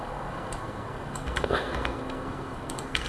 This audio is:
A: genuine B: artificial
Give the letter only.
B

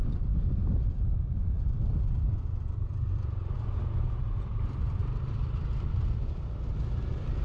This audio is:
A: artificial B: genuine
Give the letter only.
B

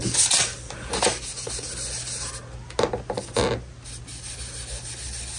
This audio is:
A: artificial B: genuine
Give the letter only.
B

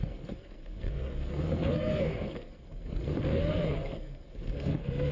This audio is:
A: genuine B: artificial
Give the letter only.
B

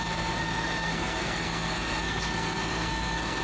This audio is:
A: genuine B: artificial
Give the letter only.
B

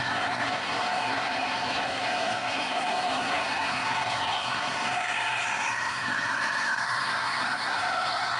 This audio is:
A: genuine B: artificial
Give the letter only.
B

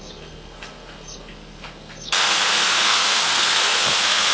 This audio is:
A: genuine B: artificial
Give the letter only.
B